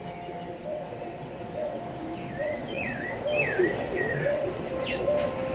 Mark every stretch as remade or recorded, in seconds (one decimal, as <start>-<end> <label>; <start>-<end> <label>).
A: 0.0-0.7 recorded; 0.7-1.8 remade; 1.8-2.4 recorded; 2.4-3.2 remade; 3.2-3.8 recorded; 3.8-4.7 remade; 4.7-5.5 recorded